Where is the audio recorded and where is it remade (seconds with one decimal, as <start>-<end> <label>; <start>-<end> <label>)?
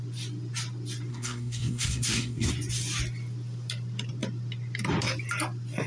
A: 0.0-1.1 recorded; 1.1-2.5 remade; 2.5-5.9 recorded